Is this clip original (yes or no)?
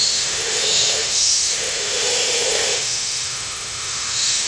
no